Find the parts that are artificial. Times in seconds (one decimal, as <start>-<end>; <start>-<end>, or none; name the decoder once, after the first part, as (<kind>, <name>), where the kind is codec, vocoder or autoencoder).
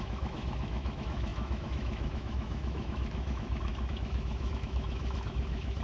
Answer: 0.0-5.8 (autoencoder, DAC-VAE)